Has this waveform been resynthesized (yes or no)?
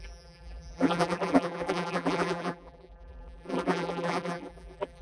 yes